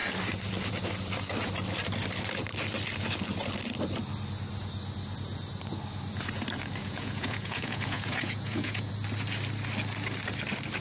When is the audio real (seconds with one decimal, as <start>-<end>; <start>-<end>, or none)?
0.0-6.8; 8.9-10.8